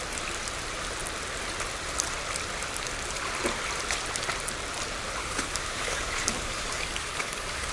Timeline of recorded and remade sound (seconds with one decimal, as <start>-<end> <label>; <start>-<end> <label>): 0.0-5.2 recorded; 5.2-7.7 remade

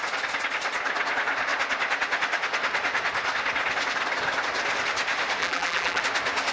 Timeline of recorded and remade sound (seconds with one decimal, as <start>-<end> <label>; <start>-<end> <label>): 0.0-5.4 recorded; 5.4-6.0 remade; 6.0-6.5 recorded

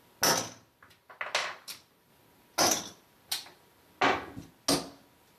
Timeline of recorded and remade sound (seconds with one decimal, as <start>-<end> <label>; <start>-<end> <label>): 0.0-1.4 recorded; 1.4-2.1 remade; 2.1-5.4 recorded

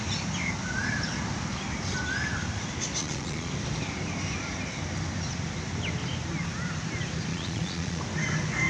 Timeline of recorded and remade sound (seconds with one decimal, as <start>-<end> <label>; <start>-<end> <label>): 0.0-3.0 recorded; 3.0-3.5 remade; 3.5-7.3 recorded; 7.3-8.0 remade; 8.0-8.7 recorded

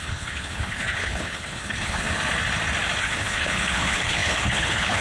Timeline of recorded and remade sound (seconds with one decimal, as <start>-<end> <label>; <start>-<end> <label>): 0.0-2.1 remade; 2.1-3.0 recorded; 3.0-5.0 remade